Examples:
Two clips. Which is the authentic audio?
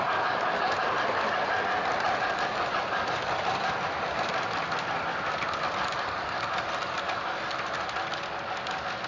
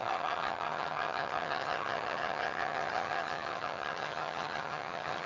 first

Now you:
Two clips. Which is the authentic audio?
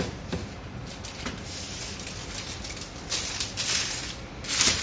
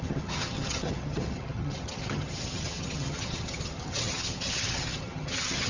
first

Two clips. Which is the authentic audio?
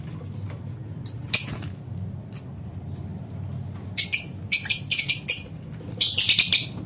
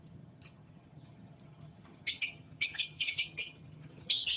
first